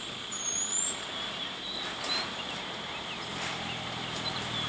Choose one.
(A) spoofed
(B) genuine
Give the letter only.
A